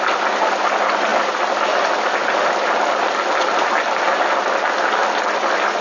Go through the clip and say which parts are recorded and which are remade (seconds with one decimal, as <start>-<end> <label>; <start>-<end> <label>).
0.0-5.8 recorded